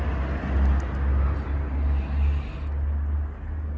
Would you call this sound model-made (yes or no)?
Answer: no